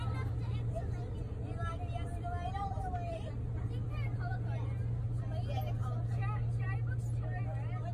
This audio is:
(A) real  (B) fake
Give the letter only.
A